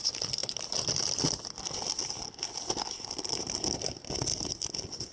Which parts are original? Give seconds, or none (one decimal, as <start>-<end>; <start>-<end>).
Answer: 0.0-5.1